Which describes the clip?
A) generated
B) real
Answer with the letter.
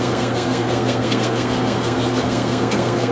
A